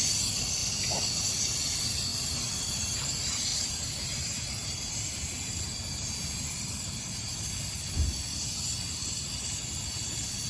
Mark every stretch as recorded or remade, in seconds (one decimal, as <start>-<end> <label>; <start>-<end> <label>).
0.0-3.5 recorded; 3.5-6.7 remade; 6.7-10.5 recorded